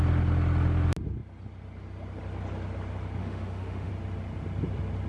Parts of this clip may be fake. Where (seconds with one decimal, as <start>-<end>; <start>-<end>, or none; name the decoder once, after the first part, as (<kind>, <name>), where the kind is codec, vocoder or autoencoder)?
3.2-3.9 (autoencoder, DAC-VAE)